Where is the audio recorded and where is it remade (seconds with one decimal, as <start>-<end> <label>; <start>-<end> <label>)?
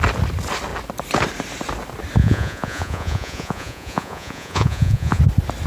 0.0-2.2 recorded; 2.2-5.2 remade; 5.2-5.7 recorded